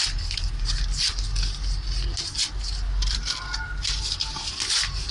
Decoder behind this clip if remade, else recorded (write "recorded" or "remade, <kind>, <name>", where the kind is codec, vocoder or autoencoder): recorded